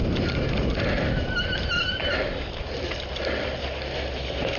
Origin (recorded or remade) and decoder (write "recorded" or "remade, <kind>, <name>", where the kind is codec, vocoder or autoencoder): recorded